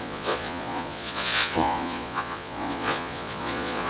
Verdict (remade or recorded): remade